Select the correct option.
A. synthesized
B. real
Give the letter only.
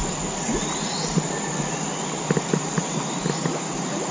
B